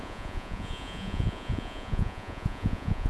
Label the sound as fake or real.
fake